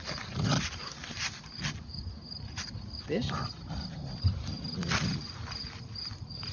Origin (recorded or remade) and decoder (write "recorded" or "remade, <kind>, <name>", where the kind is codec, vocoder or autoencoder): recorded